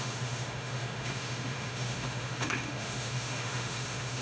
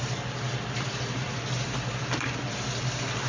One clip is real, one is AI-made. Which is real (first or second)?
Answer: second